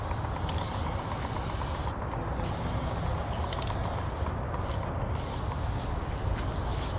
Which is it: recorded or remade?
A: recorded